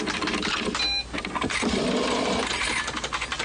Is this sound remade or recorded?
recorded